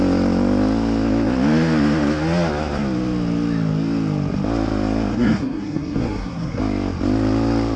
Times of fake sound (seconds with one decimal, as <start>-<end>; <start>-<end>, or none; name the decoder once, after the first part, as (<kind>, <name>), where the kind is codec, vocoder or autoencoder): 5.1-6.6 (codec, SNAC)